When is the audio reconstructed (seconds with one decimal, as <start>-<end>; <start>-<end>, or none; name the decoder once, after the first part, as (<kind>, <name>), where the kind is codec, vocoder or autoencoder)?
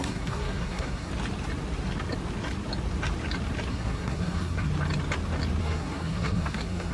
0.0-1.1 (codec, SNAC); 3.7-4.7; 5.6-6.9